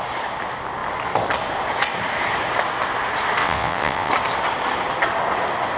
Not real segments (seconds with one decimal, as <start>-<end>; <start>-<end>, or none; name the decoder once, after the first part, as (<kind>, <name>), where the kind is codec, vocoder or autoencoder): 3.4-4.1 (vocoder, WaveNeXt)